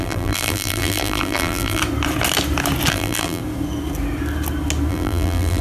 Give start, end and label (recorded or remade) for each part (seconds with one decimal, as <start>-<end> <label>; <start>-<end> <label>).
0.0-1.8 remade; 1.8-2.9 recorded; 2.9-3.4 remade; 3.4-4.9 recorded; 4.9-5.6 remade